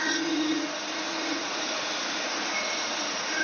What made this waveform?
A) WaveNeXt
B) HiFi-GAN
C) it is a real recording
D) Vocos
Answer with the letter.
D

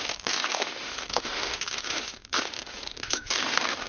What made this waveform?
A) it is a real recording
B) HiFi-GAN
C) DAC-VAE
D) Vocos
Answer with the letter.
C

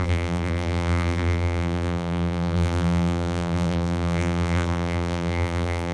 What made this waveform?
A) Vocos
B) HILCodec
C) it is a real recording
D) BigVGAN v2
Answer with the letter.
D